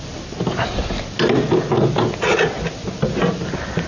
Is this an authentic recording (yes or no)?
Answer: yes